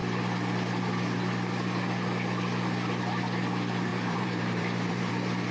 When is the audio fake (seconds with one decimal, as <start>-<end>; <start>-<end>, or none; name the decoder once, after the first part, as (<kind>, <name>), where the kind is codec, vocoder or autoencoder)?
3.9-5.1 (vocoder, BigVGAN v2)